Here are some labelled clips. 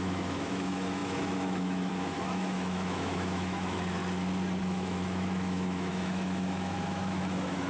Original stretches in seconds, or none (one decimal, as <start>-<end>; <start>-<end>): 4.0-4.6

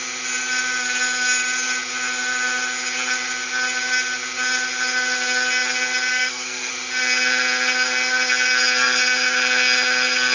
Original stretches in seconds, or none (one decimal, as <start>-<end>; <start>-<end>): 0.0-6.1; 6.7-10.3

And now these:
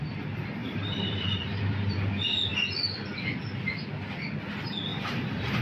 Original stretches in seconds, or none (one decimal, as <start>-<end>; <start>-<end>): 0.0-0.6; 1.2-4.9

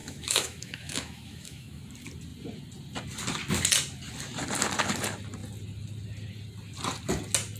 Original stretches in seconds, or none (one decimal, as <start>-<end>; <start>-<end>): 1.8-7.6

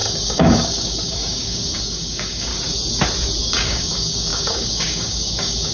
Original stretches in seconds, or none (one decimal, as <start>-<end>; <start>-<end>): 2.5-3.4